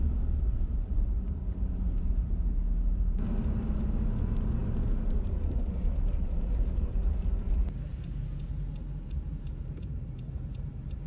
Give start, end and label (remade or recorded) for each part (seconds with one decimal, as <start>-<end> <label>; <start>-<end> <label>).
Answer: 0.0-11.1 remade